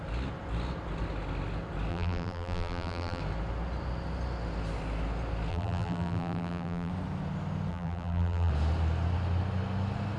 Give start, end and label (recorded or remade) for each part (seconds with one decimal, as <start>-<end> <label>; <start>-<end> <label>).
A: 0.0-1.9 recorded; 1.9-3.2 remade; 3.2-5.5 recorded; 5.5-6.9 remade; 6.9-7.7 recorded; 7.7-8.5 remade; 8.5-10.2 recorded